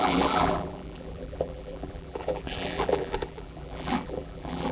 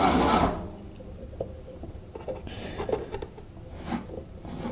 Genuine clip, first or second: second